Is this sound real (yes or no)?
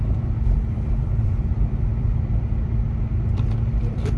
no